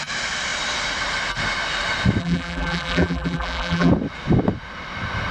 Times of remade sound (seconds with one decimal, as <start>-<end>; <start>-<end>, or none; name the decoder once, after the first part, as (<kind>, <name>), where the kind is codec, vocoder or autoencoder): 2.2-3.9 (vocoder, BigVGAN v2)